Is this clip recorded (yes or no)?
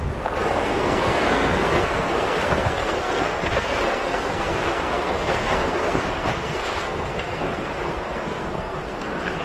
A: no